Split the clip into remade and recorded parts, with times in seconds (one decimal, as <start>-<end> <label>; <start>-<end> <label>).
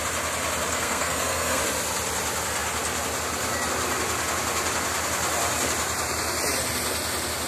0.0-0.7 recorded; 0.7-1.6 remade; 1.6-7.5 recorded